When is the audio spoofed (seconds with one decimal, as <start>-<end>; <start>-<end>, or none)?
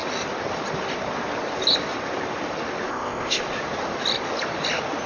2.9-3.4